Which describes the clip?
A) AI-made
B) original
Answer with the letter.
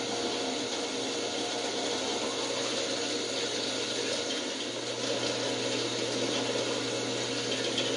B